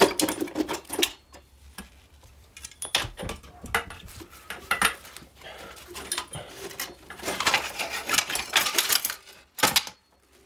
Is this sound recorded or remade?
recorded